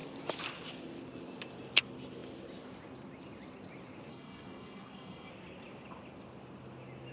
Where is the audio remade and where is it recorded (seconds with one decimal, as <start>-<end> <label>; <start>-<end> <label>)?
0.0-4.1 recorded; 4.1-5.3 remade; 5.3-7.1 recorded